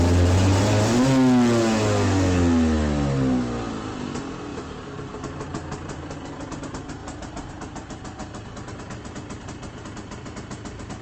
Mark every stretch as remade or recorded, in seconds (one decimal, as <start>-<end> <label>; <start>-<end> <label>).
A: 0.0-4.5 recorded; 4.5-6.6 remade; 6.6-8.2 recorded; 8.2-11.0 remade